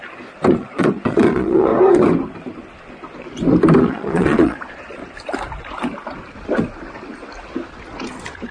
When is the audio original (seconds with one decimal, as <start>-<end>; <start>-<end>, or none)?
0.0-0.5; 1.7-3.8; 5.0-8.5